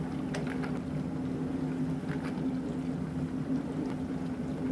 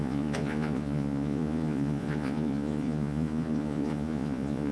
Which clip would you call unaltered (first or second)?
first